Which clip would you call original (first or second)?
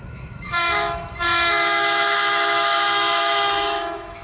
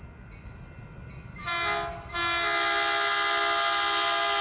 second